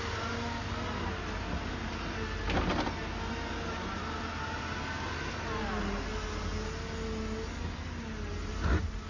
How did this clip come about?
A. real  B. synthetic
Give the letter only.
A